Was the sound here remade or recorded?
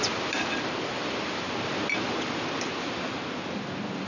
recorded